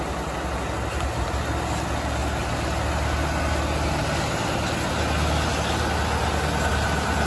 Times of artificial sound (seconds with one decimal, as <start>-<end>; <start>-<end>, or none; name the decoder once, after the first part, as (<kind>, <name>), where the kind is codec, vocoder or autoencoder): none

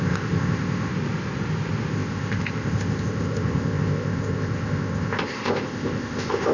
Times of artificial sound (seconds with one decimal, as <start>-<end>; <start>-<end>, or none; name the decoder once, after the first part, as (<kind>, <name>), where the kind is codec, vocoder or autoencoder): 0.0-0.9 (codec, ZipCodec); 1.9-6.5

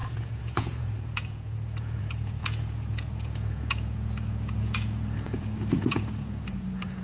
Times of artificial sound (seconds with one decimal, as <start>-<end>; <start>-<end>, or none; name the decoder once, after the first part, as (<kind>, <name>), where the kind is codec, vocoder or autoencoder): 0.0-7.0 (vocoder, Vocos)

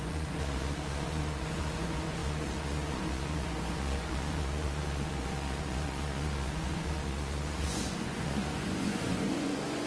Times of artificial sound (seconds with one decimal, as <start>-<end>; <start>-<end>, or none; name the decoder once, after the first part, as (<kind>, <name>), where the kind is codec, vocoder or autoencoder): 0.0-9.9 (vocoder, Vocos)

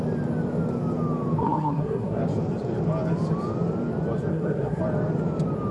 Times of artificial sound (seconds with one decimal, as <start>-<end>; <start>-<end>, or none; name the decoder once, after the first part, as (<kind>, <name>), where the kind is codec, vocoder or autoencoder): 1.4-2.2 (codec, SNAC); 4.3-4.8

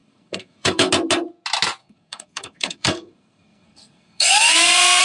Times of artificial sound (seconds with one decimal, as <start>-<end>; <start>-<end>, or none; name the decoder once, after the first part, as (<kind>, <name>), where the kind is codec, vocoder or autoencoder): 0.0-0.9 (codec, SNAC); 1.8-5.0

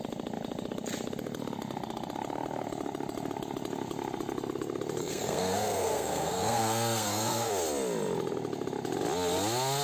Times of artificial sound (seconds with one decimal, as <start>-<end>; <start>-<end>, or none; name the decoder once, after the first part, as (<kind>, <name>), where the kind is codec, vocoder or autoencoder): 5.0-7.5 (codec, SNAC)